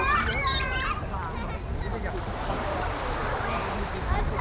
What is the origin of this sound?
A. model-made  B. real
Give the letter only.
B